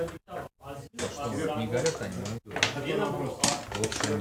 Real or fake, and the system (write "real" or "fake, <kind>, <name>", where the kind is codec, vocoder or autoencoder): real